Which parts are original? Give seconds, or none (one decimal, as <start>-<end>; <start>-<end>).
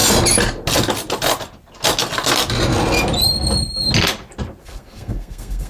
0.0-4.6